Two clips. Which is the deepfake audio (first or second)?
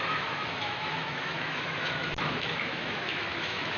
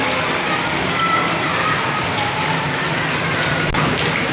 first